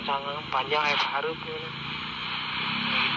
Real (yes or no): yes